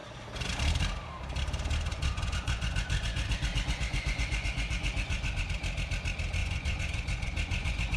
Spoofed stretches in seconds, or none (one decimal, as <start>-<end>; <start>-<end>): 1.9-5.4; 6.4-8.0